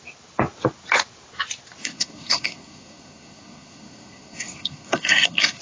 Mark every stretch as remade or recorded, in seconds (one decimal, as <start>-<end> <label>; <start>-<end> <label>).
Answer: 0.0-1.8 recorded; 1.8-5.6 remade